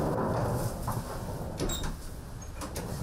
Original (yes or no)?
yes